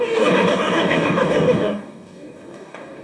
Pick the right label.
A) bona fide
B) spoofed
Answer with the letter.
B